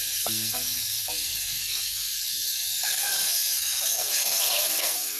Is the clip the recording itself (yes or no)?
no